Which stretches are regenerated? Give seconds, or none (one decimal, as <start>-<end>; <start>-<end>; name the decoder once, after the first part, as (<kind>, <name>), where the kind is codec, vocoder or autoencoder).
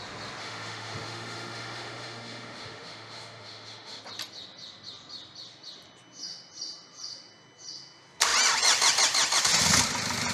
0.4-4.0 (autoencoder, DAC-VAE)